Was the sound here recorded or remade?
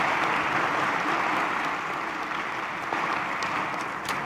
recorded